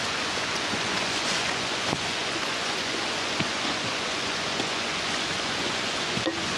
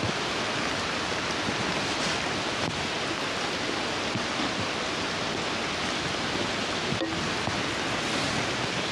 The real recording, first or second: second